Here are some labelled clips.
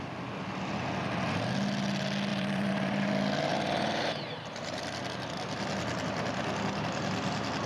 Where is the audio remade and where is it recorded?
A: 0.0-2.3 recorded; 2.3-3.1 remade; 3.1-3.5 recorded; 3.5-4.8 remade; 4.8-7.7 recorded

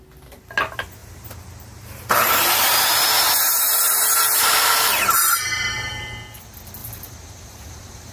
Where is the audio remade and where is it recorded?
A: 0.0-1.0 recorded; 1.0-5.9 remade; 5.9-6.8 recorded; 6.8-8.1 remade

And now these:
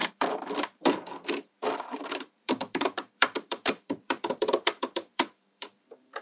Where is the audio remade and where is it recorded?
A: 0.0-6.2 remade